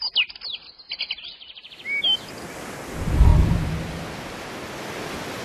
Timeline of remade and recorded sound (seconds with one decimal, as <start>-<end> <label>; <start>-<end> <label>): 0.0-5.4 recorded